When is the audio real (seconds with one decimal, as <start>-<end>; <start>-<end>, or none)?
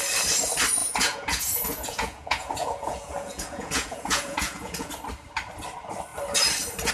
0.0-0.8; 4.9-6.9